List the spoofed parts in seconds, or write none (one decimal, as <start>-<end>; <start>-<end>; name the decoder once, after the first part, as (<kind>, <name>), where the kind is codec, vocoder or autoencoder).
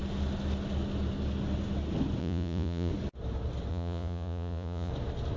2.2-2.9 (vocoder, Vocos); 3.7-4.9